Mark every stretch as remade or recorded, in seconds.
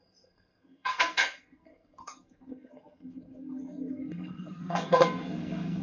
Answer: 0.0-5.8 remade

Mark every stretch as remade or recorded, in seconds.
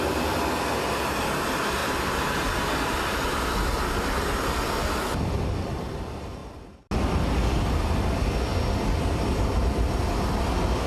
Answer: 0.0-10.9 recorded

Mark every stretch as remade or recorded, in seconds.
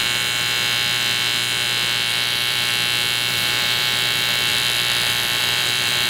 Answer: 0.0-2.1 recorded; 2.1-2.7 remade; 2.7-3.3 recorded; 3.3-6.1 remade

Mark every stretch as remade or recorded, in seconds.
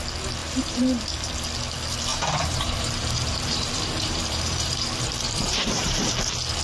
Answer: 0.0-0.4 recorded; 0.4-1.3 remade; 1.3-2.1 recorded; 2.1-6.1 remade; 6.1-6.6 recorded